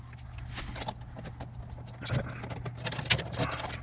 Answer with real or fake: real